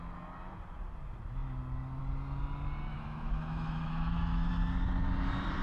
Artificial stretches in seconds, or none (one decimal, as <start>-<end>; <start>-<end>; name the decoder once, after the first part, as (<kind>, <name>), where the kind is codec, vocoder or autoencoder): 2.9-4.5 (autoencoder, DAC-VAE)